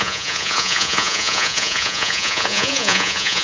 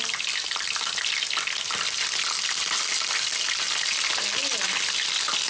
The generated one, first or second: first